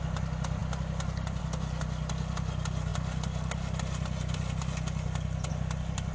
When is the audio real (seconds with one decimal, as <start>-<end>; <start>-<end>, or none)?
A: 0.0-6.1